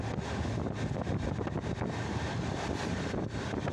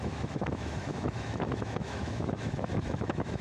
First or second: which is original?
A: first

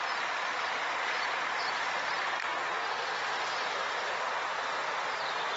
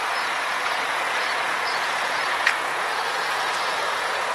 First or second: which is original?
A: first